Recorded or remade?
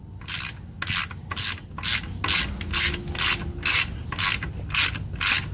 recorded